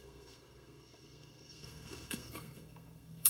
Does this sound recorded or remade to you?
remade